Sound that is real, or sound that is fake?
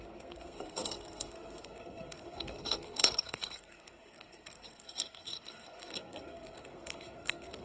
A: fake